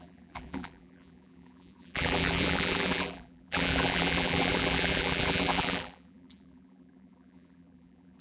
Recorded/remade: remade